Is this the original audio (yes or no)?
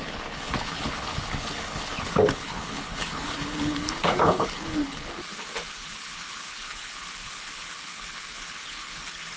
no